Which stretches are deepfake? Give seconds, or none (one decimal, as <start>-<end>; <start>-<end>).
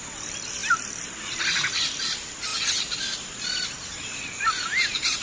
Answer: none